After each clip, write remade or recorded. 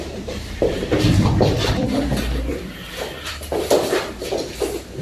remade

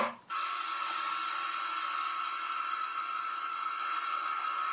recorded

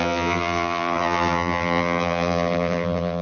remade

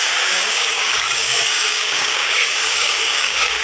remade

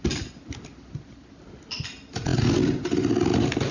recorded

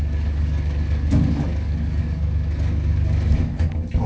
remade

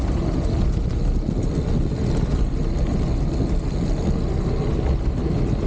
recorded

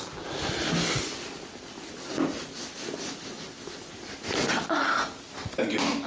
recorded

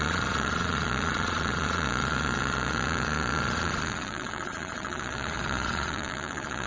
remade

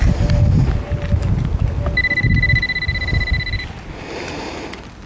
recorded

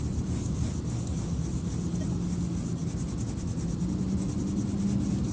recorded